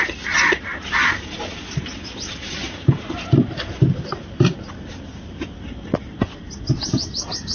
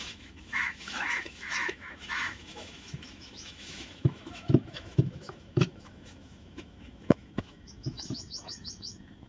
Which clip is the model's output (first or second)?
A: second